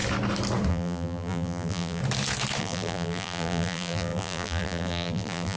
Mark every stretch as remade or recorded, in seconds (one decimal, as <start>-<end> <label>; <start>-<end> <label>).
0.0-0.7 recorded; 0.7-2.0 remade; 2.0-2.6 recorded; 2.6-5.6 remade